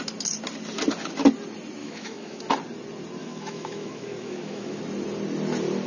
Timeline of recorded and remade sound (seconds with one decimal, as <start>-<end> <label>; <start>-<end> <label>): 0.0-1.8 recorded; 1.8-2.4 remade; 2.4-3.2 recorded; 3.2-4.8 remade; 4.8-5.9 recorded

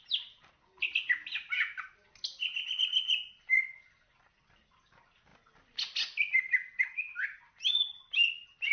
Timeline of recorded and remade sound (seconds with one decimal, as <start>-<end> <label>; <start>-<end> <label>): 0.0-8.7 recorded

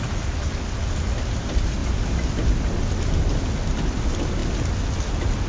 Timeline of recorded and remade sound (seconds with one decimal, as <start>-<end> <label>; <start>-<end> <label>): 0.0-5.5 recorded